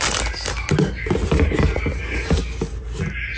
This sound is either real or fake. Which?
real